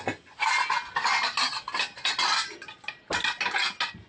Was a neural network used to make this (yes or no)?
no